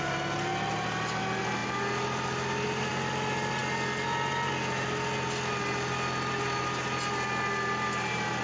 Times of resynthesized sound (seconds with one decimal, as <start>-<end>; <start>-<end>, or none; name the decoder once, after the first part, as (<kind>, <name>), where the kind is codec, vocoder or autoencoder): none